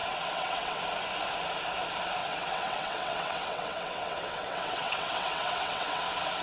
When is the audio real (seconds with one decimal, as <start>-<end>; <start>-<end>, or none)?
0.8-2.2; 6.0-6.4